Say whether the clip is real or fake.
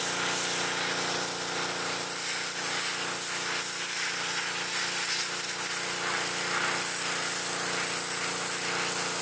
real